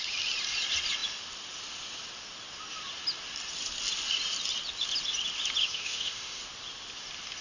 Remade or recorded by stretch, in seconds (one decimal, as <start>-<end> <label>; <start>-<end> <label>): 0.0-5.6 recorded; 5.6-6.4 remade; 6.4-7.4 recorded